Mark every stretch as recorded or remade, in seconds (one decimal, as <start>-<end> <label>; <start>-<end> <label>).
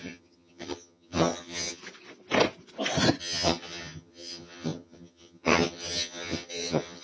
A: 0.0-1.8 remade; 1.8-3.2 recorded; 3.2-7.0 remade